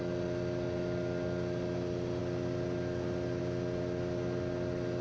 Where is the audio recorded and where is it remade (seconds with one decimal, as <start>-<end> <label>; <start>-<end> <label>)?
0.0-5.0 recorded